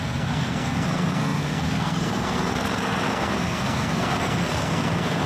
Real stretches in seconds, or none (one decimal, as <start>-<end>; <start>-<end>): none